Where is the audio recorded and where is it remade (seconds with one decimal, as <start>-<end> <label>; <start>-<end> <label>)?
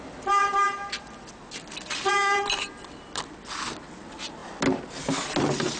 0.0-0.4 recorded; 0.4-3.2 remade; 3.2-5.8 recorded